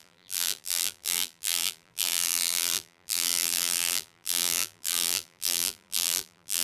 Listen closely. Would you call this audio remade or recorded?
remade